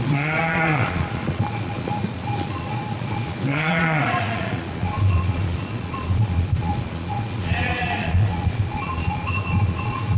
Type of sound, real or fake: fake